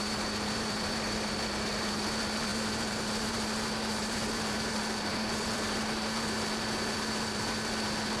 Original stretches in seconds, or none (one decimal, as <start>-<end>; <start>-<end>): none